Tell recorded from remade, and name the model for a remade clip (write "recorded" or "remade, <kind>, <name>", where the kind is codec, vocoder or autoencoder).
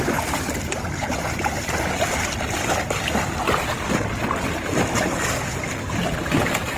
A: recorded